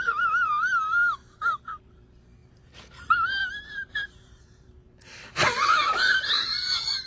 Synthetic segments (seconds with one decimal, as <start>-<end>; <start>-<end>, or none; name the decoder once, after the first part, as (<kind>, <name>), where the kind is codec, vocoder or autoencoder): 0.0-7.1 (vocoder, BigVGAN v2)